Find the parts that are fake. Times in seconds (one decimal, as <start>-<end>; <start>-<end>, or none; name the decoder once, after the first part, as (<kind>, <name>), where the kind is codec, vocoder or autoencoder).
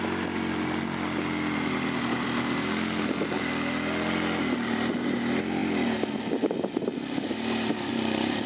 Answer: none